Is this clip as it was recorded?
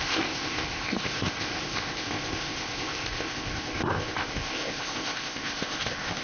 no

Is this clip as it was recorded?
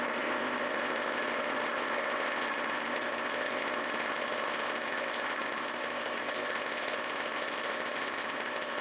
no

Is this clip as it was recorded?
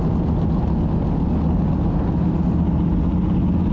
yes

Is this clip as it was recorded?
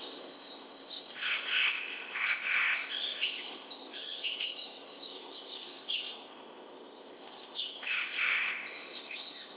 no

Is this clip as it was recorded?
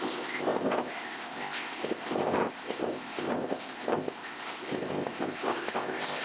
no